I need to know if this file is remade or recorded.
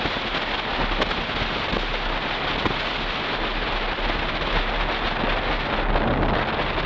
recorded